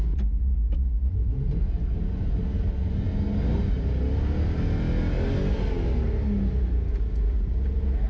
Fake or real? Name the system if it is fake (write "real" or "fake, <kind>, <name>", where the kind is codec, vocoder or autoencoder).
real